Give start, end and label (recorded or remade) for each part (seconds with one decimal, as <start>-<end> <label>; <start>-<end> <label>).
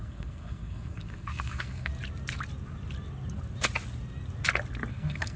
0.0-1.9 remade; 1.9-4.9 recorded; 4.9-5.4 remade